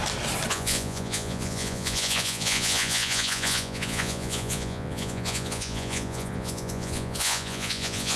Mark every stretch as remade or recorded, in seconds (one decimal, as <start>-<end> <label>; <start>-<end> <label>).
0.0-0.5 recorded; 0.5-8.2 remade